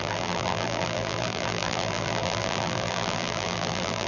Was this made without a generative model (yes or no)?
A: no